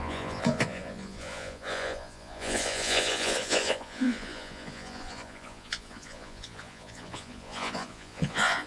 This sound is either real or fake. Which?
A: fake